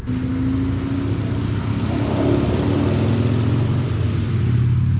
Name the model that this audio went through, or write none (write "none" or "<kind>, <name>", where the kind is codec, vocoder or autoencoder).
none